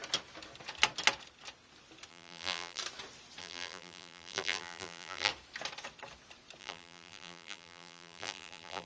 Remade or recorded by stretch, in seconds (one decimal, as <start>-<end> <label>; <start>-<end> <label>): 0.0-2.1 recorded; 2.1-2.8 remade; 2.8-3.4 recorded; 3.4-5.3 remade; 5.3-6.6 recorded; 6.6-8.9 remade

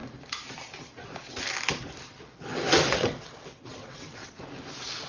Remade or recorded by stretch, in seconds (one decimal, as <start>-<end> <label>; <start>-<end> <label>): 0.0-2.9 recorded; 2.9-4.2 remade; 4.2-5.1 recorded

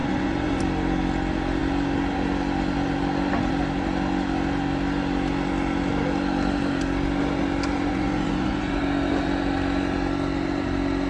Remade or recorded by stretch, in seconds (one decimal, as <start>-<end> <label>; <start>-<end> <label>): 0.0-0.6 remade; 0.6-7.8 recorded; 7.8-8.8 remade; 8.8-11.1 recorded